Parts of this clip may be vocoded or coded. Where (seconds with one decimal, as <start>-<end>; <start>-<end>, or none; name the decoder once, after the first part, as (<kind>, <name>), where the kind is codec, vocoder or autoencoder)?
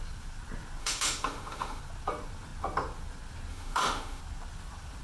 0.8-1.8 (autoencoder, DAC-VAE); 3.5-4.2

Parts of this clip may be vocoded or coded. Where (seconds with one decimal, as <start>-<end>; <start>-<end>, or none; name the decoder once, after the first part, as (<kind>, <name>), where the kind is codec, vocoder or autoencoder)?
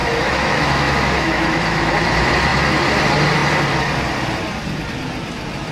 0.0-1.9 (autoencoder, DAC-VAE)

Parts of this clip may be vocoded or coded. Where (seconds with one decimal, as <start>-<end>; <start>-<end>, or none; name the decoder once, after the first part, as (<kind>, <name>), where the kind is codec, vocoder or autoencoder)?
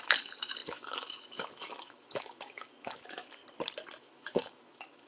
0.0-3.4 (autoencoder, DAC-VAE); 4.0-5.1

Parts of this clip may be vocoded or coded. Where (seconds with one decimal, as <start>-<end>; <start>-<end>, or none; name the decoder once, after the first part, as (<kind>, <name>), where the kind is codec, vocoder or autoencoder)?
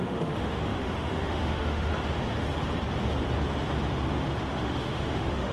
0.0-1.9 (autoencoder, DAC-VAE); 4.6-5.5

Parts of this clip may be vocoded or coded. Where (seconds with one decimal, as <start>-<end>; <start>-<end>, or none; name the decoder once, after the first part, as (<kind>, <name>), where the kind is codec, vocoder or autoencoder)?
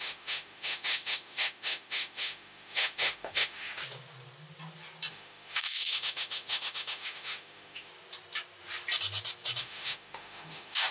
0.0-3.8 (autoencoder, DAC-VAE); 5.1-7.9; 9.6-10.9